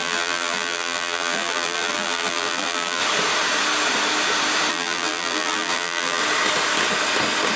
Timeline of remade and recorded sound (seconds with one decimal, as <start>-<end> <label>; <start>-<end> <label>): 0.0-3.0 remade; 3.0-4.7 recorded; 4.7-6.2 remade; 6.2-7.6 recorded